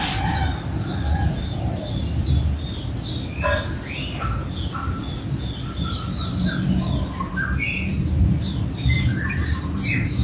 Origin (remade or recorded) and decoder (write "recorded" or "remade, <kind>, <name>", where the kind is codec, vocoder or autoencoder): recorded